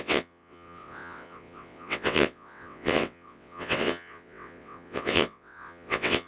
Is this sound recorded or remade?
remade